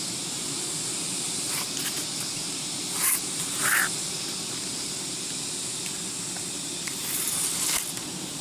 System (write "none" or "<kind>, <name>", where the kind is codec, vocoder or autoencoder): none